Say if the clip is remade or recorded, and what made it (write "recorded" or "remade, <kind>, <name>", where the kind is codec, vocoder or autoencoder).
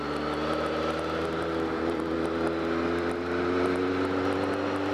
recorded